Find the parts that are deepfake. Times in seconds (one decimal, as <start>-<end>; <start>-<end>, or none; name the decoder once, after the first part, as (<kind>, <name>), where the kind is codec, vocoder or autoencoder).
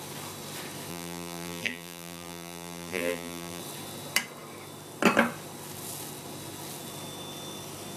0.9-3.6 (vocoder, BigVGAN v2)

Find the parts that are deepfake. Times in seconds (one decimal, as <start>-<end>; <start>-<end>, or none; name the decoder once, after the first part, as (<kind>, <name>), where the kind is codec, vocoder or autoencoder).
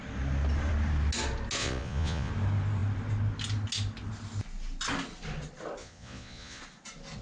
1.6-2.3 (vocoder, Vocos); 5.8-6.6